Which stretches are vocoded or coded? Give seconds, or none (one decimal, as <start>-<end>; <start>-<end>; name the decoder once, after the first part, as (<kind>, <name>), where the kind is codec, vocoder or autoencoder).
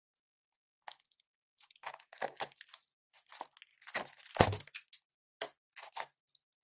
none